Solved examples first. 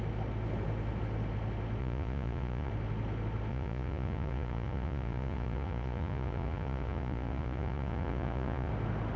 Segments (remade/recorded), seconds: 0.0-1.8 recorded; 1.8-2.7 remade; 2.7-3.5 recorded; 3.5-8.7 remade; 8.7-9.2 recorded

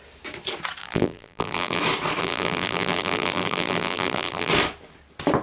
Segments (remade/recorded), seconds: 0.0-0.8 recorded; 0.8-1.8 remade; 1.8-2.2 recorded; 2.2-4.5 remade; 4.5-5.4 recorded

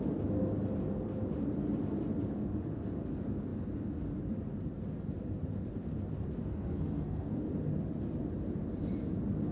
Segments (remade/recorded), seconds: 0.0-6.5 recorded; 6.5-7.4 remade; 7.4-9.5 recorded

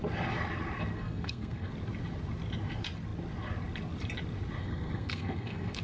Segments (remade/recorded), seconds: 0.0-0.9 recorded; 0.9-1.7 remade; 1.7-4.6 recorded; 4.6-5.8 remade

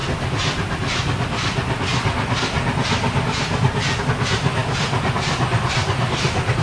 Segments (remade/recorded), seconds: 0.0-6.6 recorded